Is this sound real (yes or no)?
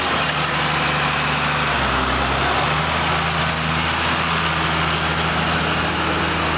yes